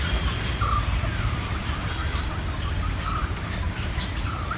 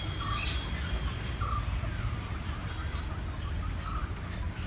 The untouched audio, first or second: second